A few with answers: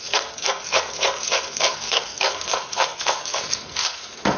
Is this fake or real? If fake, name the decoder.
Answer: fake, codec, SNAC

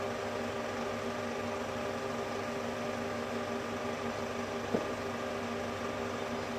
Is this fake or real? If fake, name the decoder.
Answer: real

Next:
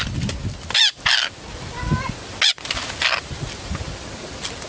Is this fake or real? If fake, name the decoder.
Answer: real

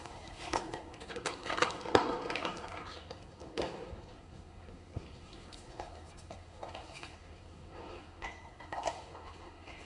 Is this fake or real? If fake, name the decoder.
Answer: fake, codec, SNAC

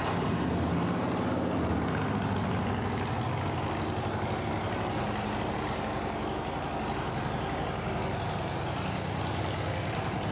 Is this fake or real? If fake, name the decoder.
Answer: real